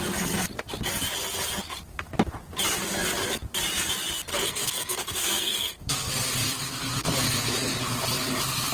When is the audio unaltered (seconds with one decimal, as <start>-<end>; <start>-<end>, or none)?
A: 0.0-4.3; 6.1-8.7